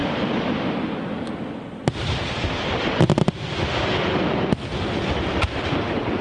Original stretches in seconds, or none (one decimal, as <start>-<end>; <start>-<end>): 0.0-6.2